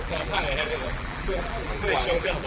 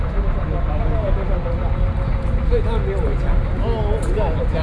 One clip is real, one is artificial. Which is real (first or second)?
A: second